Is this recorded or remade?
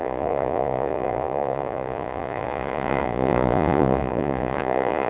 remade